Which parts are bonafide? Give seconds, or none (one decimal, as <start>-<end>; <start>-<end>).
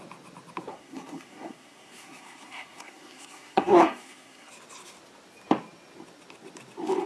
0.0-0.7; 4.5-7.1